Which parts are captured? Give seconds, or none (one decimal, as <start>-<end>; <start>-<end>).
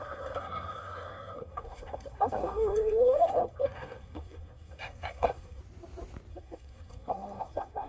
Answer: 5.6-6.3